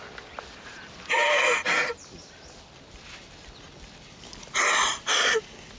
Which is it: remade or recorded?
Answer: recorded